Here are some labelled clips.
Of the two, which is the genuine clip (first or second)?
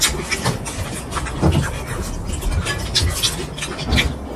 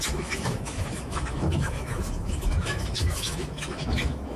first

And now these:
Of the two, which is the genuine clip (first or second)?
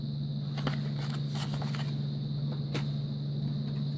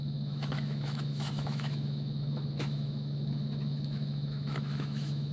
first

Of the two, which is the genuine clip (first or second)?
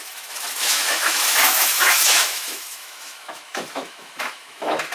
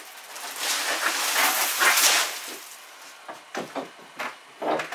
second